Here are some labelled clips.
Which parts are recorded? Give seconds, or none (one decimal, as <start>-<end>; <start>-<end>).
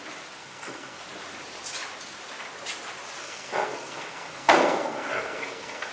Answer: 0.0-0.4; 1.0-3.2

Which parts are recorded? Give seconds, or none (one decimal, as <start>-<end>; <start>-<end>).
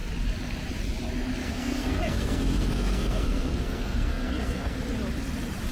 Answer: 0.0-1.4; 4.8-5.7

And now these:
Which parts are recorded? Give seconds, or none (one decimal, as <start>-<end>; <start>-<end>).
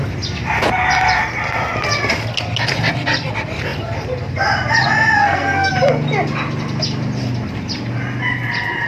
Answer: 0.0-5.2; 5.7-8.9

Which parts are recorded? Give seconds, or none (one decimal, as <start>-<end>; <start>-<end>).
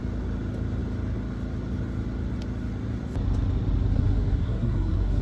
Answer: 0.0-3.9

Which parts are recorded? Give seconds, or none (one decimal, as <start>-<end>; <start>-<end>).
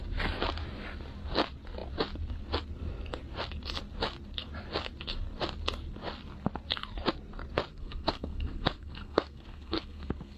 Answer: 0.0-7.7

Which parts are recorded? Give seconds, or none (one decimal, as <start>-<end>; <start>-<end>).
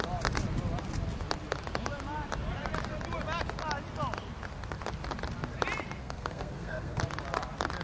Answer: 0.0-6.0; 7.0-7.8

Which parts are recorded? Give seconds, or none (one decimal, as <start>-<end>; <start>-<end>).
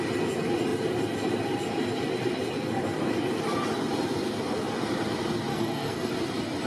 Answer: 0.0-5.5; 6.1-6.7